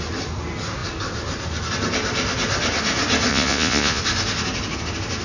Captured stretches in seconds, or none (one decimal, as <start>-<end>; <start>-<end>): 0.0-3.3; 4.0-5.2